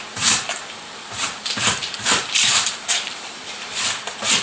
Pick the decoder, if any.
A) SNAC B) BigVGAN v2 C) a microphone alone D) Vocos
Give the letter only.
B